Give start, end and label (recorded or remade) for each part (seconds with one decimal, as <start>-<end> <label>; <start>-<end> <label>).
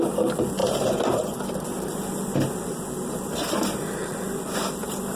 0.0-0.6 recorded; 0.6-1.8 remade; 1.8-5.2 recorded